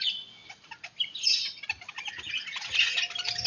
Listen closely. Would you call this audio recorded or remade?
recorded